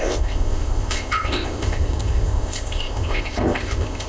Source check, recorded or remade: remade